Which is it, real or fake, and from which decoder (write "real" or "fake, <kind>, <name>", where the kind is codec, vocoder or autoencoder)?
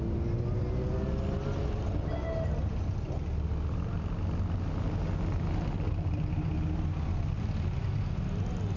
real